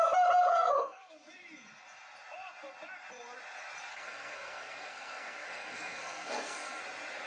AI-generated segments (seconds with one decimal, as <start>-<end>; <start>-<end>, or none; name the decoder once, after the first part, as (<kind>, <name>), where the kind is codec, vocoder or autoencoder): 0.5-1.1 (codec, SNAC); 3.9-6.8